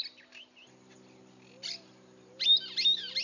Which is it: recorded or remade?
recorded